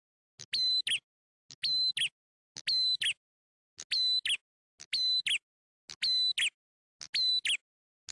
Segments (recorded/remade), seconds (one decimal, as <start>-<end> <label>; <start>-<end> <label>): 0.0-8.1 recorded